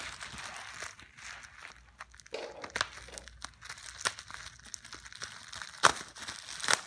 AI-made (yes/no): no